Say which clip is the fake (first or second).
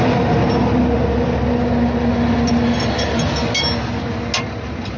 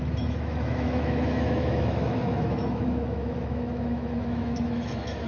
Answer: second